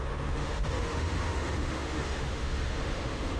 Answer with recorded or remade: remade